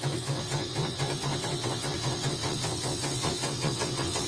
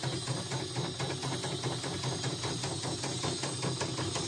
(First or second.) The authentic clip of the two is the second